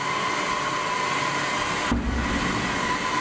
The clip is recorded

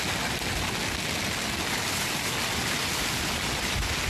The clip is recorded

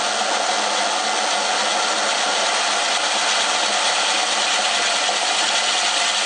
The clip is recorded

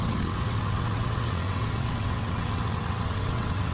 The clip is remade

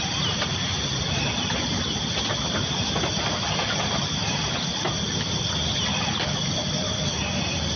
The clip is recorded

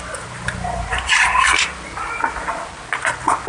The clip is remade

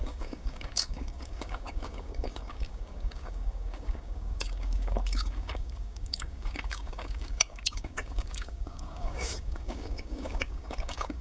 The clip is remade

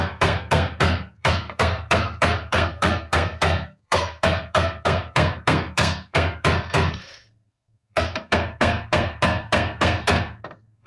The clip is remade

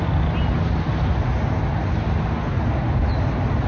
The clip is recorded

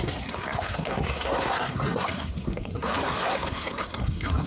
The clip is remade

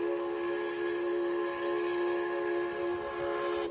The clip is recorded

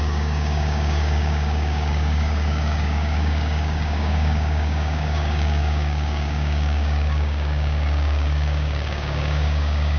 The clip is remade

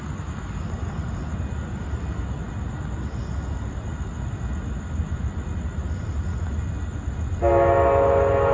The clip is recorded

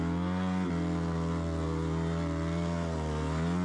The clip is recorded